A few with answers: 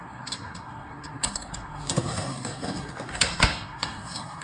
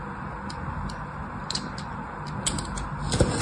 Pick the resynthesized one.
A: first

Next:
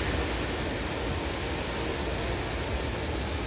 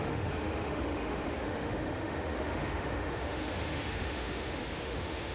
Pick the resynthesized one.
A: second